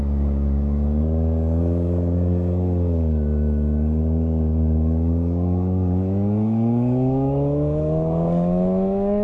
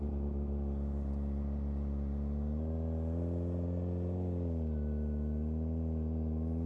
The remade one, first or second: first